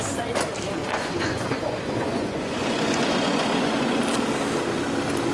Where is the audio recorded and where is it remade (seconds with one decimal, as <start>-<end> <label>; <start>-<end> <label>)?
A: 0.0-0.8 recorded; 0.8-4.0 remade; 4.0-5.3 recorded